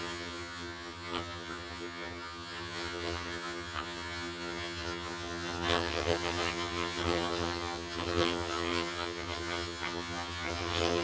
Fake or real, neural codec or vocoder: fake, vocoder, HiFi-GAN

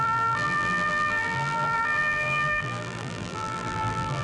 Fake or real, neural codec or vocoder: fake, vocoder, BigVGAN v2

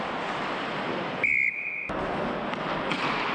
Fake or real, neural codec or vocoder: real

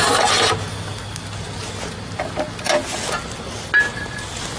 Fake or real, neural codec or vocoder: real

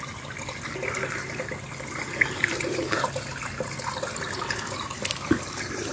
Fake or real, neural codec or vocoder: real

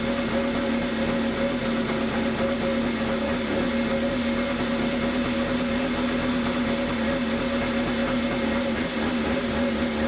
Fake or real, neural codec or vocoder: real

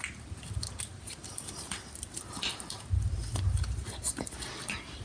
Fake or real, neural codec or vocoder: real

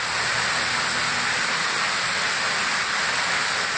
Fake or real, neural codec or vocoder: real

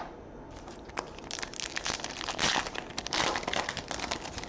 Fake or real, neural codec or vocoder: real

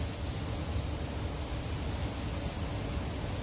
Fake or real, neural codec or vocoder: real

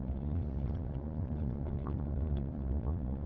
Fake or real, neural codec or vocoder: fake, vocoder, Vocos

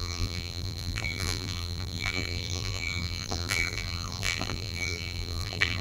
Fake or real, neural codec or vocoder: fake, vocoder, BigVGAN v2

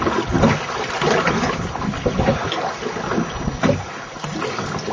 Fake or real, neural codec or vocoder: real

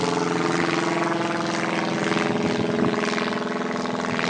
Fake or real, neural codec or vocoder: real